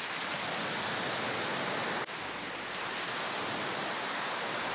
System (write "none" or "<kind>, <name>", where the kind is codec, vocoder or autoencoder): none